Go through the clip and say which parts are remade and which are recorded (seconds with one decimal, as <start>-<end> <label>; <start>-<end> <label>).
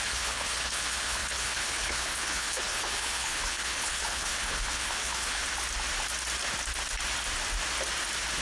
0.0-5.4 remade; 5.4-8.4 recorded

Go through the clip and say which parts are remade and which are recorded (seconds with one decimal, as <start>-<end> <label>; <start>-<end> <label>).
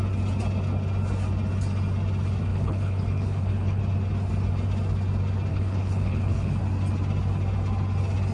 0.0-2.5 recorded; 2.5-3.8 remade; 3.8-5.5 recorded; 5.5-6.6 remade; 6.6-8.3 recorded